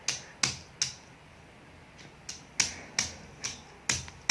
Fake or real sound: real